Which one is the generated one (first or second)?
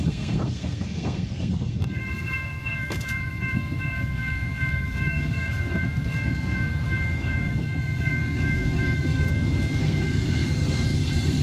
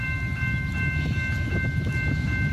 first